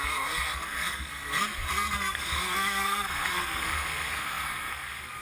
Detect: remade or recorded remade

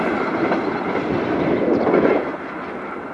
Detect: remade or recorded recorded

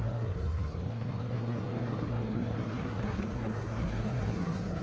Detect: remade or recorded remade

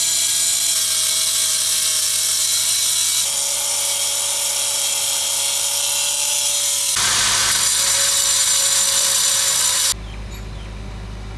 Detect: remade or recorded recorded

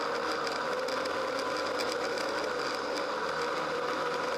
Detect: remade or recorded recorded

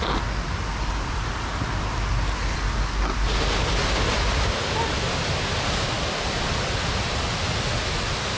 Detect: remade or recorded recorded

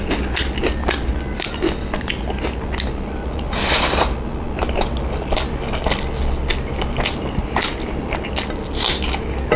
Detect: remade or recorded recorded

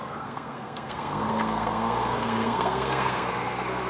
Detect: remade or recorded remade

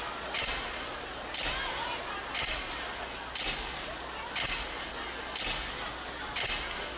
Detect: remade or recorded recorded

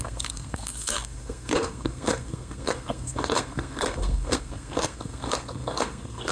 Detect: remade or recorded remade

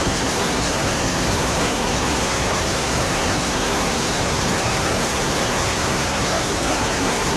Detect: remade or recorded remade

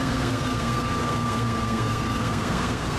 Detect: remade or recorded remade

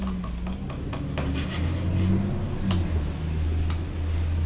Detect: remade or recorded recorded